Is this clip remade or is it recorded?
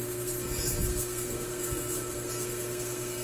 remade